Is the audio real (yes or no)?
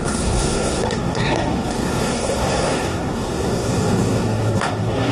no